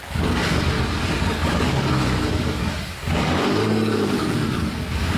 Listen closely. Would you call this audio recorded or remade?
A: remade